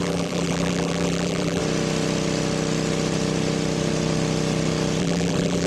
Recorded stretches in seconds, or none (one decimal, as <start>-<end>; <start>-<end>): 1.6-5.0